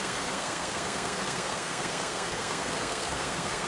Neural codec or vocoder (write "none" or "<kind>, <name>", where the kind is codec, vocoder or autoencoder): codec, SNAC